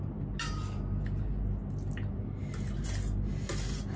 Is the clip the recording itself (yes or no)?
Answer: yes